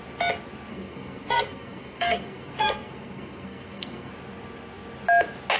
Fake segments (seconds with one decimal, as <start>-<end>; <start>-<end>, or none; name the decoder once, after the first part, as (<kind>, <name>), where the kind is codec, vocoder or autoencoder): 0.7-4.1 (codec, SNAC)